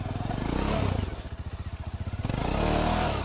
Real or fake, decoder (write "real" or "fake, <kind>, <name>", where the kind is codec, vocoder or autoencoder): real